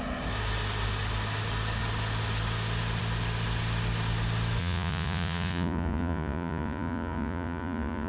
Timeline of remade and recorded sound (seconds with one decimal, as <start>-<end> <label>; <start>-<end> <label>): 0.0-4.6 recorded; 4.6-8.1 remade